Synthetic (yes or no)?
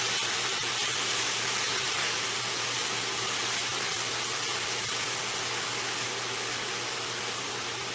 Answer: no